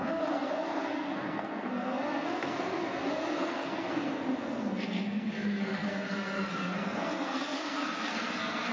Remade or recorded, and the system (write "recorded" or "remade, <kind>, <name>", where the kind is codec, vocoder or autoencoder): remade, codec, SNAC